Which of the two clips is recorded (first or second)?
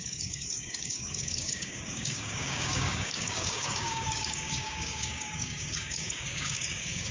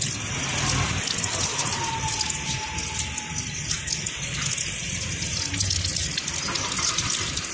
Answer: second